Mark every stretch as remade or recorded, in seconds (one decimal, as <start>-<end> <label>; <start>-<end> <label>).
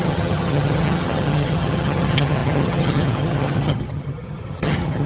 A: 0.0-5.1 remade